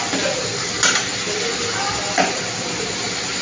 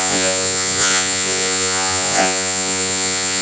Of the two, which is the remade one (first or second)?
second